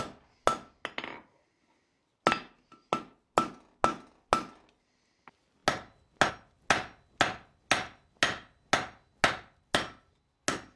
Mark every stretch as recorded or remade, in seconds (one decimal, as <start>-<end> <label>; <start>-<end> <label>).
0.0-10.8 recorded